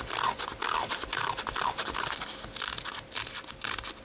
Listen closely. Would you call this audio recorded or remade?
recorded